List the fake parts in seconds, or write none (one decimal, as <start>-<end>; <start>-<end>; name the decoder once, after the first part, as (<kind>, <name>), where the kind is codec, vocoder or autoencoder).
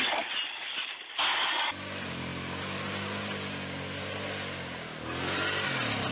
none